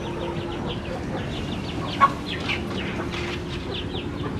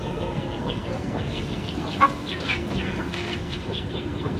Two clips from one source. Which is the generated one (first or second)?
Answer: second